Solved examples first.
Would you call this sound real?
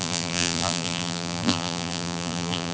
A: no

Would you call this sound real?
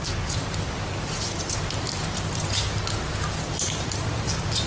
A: yes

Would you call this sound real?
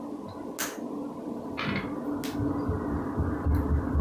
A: yes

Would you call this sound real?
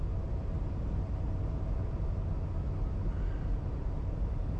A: yes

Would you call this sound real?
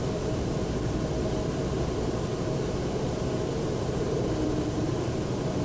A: no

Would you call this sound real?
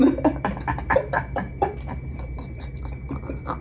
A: yes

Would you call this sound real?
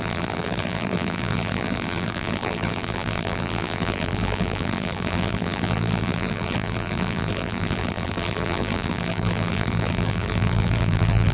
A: no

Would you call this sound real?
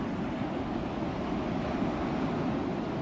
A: yes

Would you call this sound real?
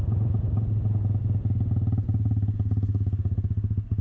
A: yes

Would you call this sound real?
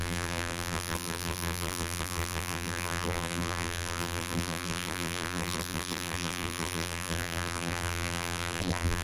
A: no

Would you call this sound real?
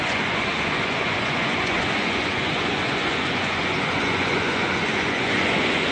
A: no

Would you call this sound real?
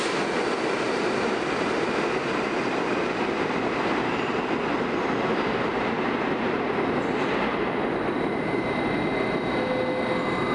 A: yes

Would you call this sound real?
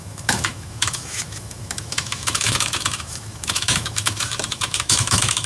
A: no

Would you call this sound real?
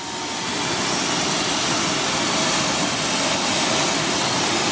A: yes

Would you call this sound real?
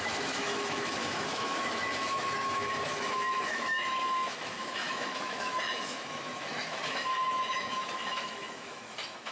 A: no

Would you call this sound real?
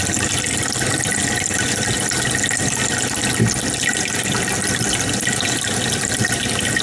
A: yes